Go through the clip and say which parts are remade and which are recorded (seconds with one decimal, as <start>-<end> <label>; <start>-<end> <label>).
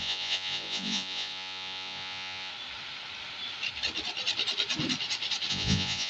0.0-2.5 remade; 2.5-5.5 recorded; 5.5-6.1 remade